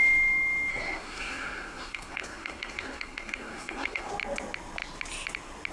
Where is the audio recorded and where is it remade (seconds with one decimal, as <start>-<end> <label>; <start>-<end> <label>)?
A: 0.0-0.7 recorded; 0.7-4.1 remade; 4.1-5.7 recorded